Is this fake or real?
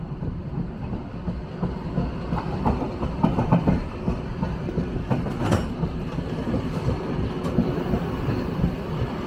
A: real